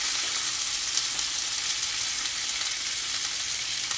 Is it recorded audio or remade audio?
recorded